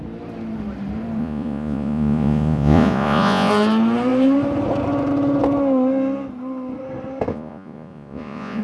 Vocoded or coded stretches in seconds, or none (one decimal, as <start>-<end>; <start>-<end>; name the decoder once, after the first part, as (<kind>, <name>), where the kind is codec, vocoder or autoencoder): 1.2-3.5 (vocoder, Vocos); 7.3-8.6